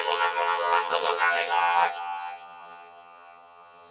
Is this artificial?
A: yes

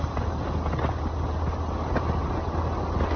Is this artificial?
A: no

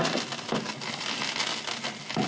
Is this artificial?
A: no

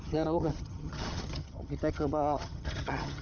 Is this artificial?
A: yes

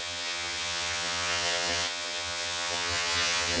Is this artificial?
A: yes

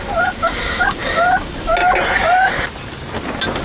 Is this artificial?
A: no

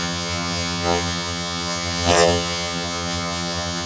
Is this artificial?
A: yes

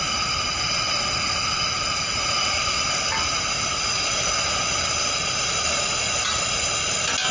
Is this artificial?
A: no